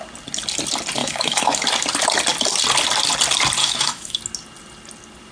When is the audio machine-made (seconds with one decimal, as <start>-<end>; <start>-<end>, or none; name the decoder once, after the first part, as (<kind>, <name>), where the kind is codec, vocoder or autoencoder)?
1.0-1.6 (autoencoder, DAC-VAE); 3.6-4.2